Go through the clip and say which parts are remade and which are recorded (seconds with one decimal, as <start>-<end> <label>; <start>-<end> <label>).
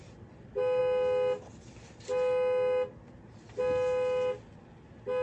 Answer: 0.0-5.2 recorded